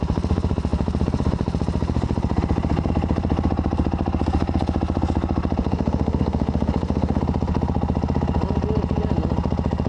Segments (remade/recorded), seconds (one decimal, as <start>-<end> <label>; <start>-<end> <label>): 0.0-5.6 recorded; 5.6-7.2 remade; 7.2-9.9 recorded